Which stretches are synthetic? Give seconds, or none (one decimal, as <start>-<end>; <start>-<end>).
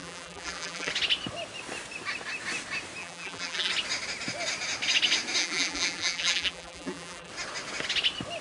0.0-0.9; 3.0-3.7; 5.4-7.3